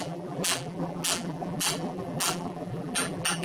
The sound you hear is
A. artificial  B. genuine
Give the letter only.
A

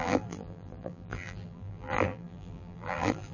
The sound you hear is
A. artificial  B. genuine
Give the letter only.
A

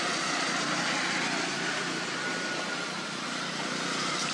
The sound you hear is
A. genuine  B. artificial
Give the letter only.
A